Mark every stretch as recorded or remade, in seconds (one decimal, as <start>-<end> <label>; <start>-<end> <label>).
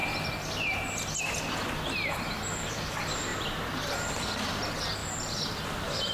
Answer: 0.0-3.3 recorded; 3.3-4.1 remade; 4.1-5.0 recorded; 5.0-6.1 remade